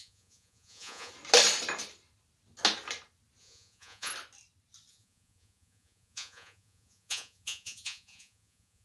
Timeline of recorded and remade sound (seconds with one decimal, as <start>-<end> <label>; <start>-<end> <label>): 0.0-1.1 remade; 1.1-3.4 recorded; 3.4-4.1 remade; 4.1-4.9 recorded; 4.9-8.8 remade